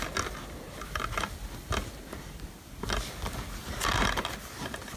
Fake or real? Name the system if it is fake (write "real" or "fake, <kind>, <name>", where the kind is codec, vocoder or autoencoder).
real